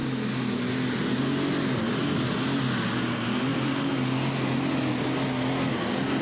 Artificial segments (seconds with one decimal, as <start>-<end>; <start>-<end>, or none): none